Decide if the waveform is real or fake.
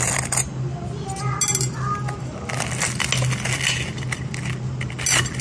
real